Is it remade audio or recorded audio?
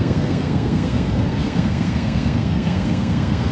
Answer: remade